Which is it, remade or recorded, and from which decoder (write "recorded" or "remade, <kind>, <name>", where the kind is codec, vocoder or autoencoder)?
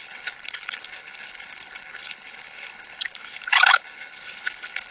remade, codec, HILCodec